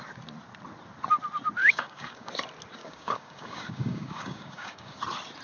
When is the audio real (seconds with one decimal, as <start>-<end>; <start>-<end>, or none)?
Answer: 0.0-1.6; 2.3-2.8; 5.0-5.4

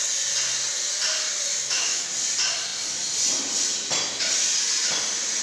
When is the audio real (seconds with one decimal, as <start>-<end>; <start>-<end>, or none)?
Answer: 0.0-1.5; 2.1-5.4

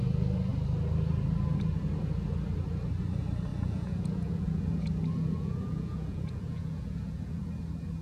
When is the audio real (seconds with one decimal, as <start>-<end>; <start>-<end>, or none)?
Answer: 0.0-3.5; 7.5-8.0

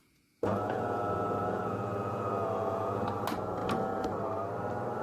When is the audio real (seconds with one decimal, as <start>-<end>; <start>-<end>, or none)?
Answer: 3.0-5.0